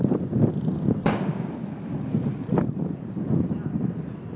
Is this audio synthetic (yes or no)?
no